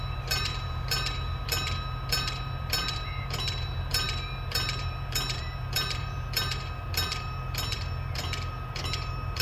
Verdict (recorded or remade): remade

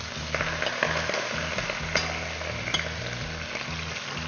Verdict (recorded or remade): recorded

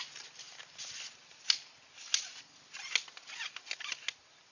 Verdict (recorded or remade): recorded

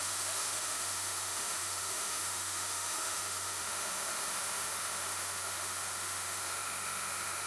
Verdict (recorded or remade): remade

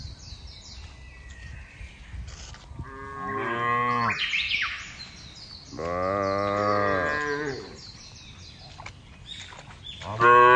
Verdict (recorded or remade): recorded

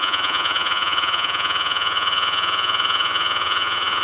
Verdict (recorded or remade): remade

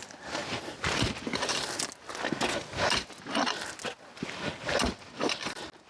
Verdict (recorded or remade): recorded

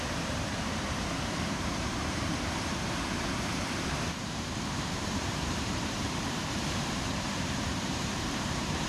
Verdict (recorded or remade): remade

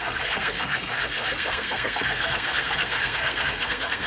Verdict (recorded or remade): remade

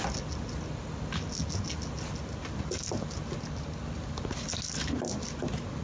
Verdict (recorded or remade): recorded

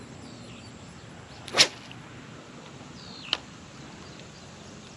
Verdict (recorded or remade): recorded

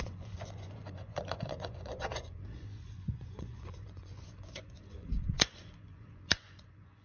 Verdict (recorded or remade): remade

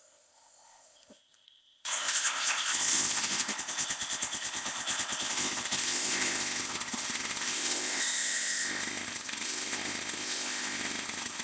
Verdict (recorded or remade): remade